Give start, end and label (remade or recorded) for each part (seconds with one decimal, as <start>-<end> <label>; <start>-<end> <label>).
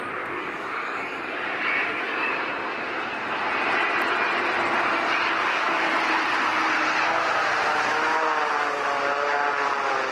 0.0-2.3 remade; 2.3-5.4 recorded; 5.4-5.9 remade; 5.9-10.1 recorded